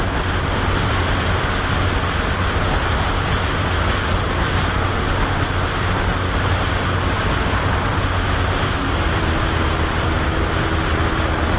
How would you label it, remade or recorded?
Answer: recorded